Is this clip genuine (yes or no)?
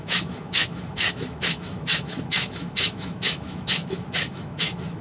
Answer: no